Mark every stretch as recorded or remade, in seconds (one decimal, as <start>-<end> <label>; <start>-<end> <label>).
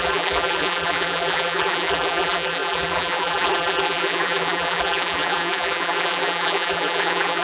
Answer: 0.0-7.4 remade